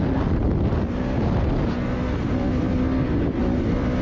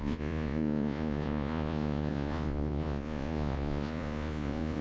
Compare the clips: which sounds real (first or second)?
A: first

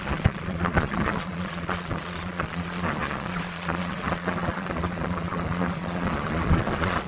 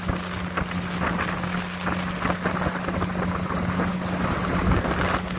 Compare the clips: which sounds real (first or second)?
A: second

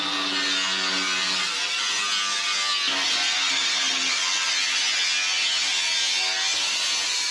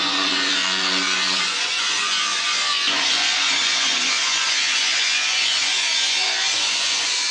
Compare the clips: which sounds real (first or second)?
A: first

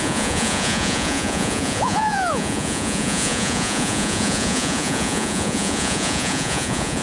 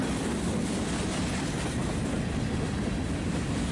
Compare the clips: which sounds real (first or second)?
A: second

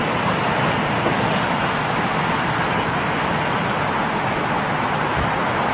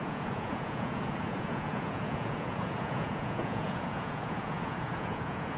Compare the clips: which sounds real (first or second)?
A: first